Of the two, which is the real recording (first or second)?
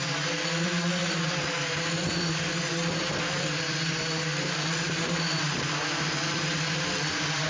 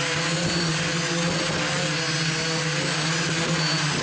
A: second